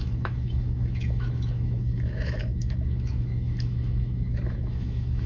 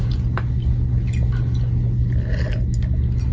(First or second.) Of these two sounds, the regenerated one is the first